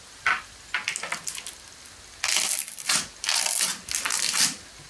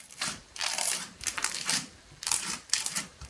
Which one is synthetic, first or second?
second